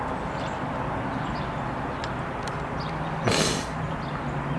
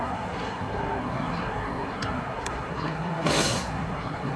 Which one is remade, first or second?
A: second